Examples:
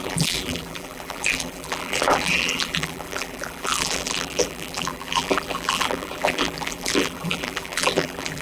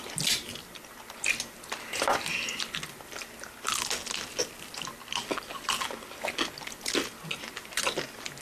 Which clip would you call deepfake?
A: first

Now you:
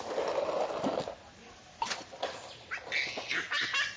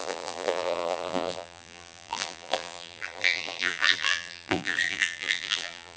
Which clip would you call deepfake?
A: second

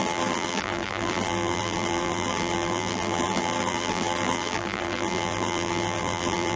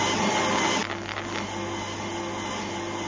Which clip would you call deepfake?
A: first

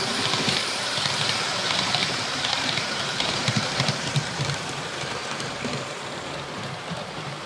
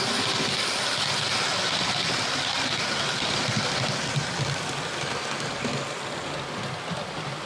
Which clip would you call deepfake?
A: first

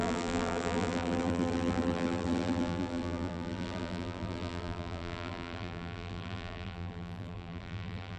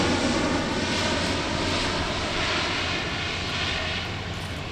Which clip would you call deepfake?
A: first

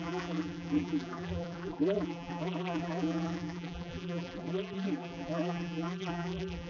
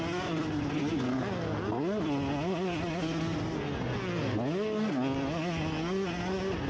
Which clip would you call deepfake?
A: first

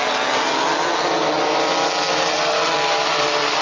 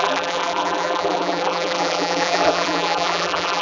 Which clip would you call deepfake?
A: second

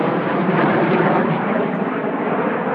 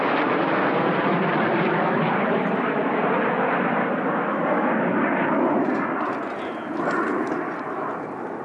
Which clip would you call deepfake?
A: first